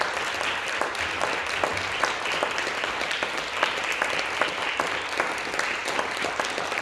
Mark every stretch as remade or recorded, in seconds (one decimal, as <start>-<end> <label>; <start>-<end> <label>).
0.0-6.8 recorded